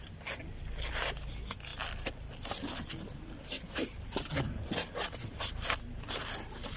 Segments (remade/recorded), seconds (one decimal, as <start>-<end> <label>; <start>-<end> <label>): 0.0-1.7 recorded; 1.7-5.8 remade; 5.8-6.8 recorded